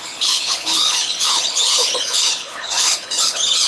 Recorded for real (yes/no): no